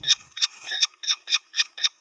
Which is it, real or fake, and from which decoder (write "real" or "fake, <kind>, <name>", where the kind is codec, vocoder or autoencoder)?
fake, codec, SNAC